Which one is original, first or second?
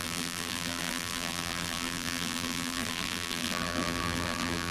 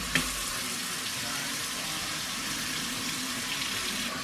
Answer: second